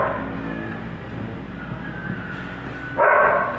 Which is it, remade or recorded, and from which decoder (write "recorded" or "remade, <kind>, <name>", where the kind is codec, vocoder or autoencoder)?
recorded